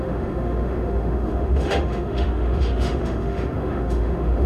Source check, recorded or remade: remade